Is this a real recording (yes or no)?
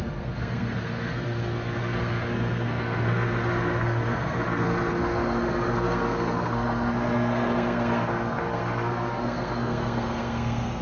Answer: no